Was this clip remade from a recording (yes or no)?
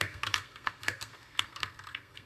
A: yes